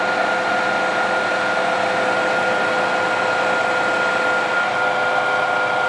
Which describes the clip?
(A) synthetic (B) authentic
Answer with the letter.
B